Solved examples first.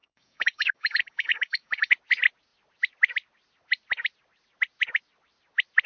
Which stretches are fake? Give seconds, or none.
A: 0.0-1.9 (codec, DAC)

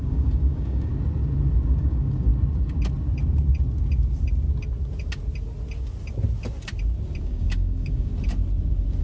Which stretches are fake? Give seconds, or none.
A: 0.0-0.9 (codec, DAC); 1.8-2.3; 7.2-8.1

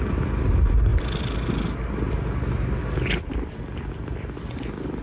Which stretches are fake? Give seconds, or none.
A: none